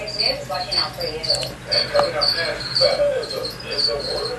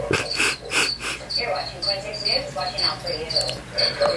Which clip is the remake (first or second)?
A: second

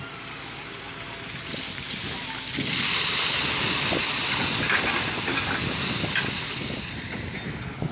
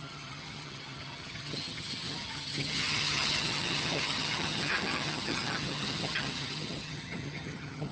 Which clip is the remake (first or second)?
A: second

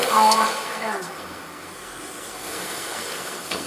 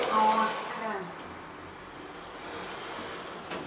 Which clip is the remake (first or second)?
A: first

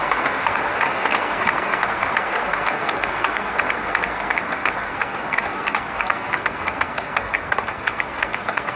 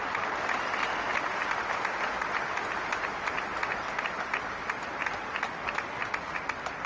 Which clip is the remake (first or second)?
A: first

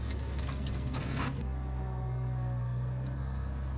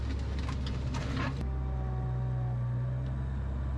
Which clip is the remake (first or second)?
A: first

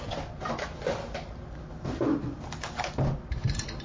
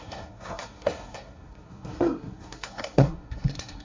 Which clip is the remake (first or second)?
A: second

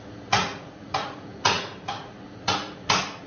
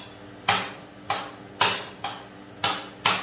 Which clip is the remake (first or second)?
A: first